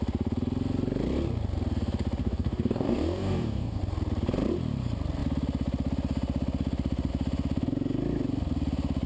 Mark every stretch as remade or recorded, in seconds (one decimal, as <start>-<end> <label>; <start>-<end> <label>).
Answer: 0.0-2.2 recorded; 2.2-3.8 remade; 3.8-9.1 recorded

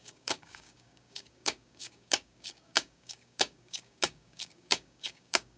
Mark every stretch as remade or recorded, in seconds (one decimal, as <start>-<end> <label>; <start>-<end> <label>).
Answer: 0.0-5.6 remade

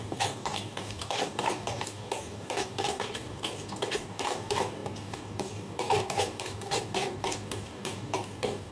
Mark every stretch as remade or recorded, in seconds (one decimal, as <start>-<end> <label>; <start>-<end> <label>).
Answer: 0.0-8.7 remade

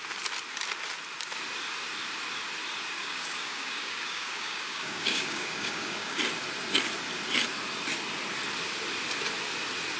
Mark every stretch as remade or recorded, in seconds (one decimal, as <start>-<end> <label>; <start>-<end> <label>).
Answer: 0.0-3.0 recorded; 3.0-6.2 remade; 6.2-10.0 recorded

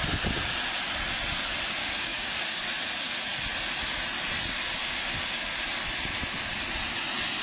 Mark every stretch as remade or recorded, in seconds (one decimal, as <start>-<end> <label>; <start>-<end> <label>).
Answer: 0.0-1.8 recorded; 1.8-2.6 remade; 2.6-4.8 recorded; 4.8-5.5 remade; 5.5-7.4 recorded

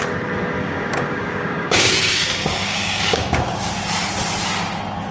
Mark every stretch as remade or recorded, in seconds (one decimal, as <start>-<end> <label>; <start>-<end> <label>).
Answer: 0.0-0.6 recorded; 0.6-3.7 remade; 3.7-5.1 recorded